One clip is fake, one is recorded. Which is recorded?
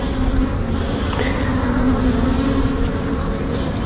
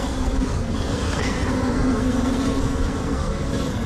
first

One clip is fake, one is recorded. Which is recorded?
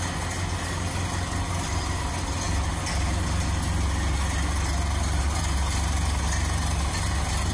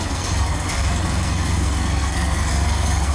first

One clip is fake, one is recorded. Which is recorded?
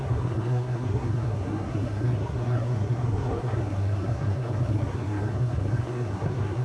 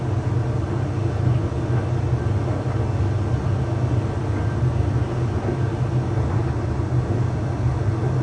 second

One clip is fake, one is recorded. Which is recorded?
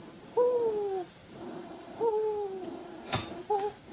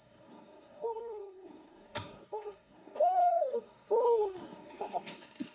first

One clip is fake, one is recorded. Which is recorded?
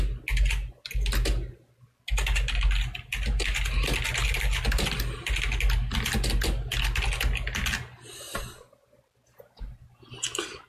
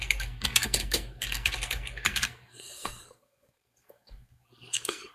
first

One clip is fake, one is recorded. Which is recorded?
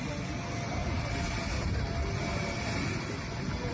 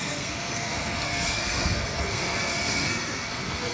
first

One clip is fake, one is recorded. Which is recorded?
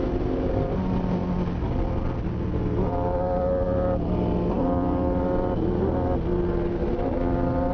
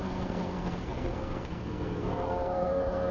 first